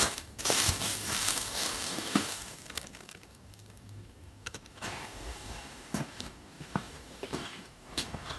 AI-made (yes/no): yes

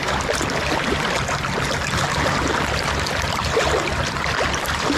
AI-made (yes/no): no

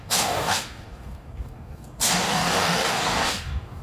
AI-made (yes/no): yes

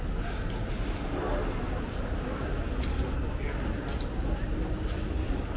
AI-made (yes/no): no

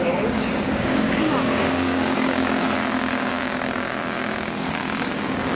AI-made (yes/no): yes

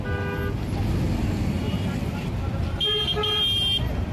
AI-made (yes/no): no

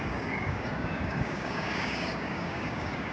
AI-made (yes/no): yes